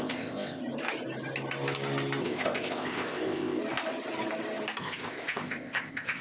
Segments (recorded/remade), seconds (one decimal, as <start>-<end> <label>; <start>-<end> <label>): 0.0-0.6 remade; 0.6-2.2 recorded; 2.2-3.6 remade; 3.6-4.8 recorded; 4.8-6.2 remade